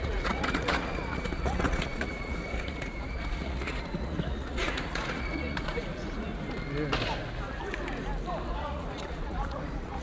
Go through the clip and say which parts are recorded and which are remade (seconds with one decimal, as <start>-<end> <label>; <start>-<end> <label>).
0.0-6.3 remade; 6.3-8.6 recorded; 8.6-10.0 remade